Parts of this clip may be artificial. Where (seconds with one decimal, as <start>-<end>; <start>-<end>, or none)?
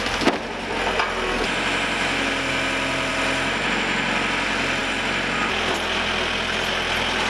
none